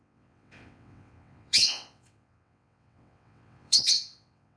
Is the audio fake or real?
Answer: fake